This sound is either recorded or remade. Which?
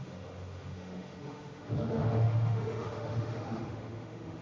remade